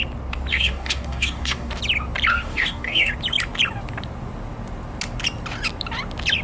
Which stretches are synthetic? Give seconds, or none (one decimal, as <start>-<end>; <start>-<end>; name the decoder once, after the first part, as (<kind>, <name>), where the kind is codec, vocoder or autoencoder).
0.5-1.7 (codec, DAC); 2.3-3.1